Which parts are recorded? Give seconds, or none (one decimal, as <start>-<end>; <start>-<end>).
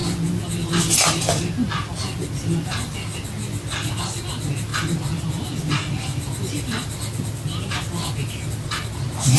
0.0-9.4